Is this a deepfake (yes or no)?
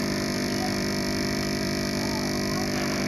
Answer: yes